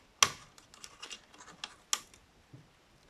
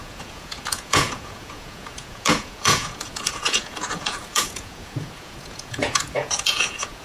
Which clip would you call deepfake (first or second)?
second